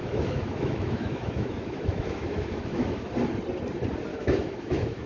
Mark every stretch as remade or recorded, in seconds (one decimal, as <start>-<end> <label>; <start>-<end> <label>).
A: 0.0-3.1 remade; 3.1-4.1 recorded; 4.1-5.1 remade